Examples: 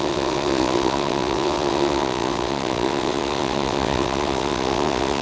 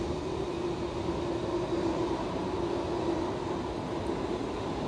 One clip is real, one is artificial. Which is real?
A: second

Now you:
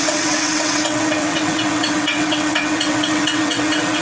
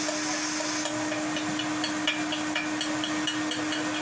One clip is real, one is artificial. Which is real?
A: second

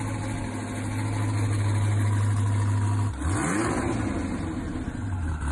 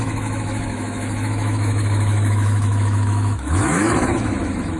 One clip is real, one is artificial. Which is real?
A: first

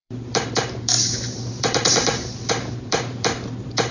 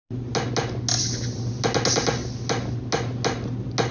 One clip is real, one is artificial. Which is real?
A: second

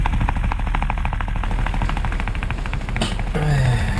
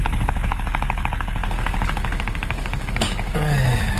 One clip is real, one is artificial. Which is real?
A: first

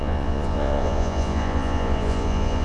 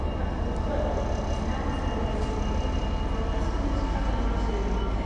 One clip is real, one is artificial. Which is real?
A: second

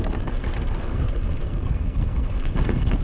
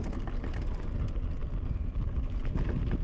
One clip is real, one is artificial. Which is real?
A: second